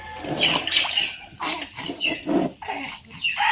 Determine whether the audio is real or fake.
real